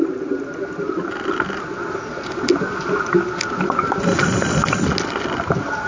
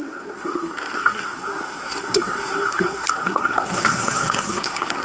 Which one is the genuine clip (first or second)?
first